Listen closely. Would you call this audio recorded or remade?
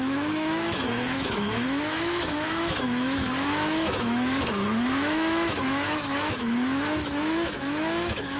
remade